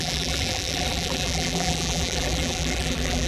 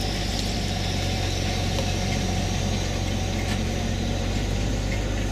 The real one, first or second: second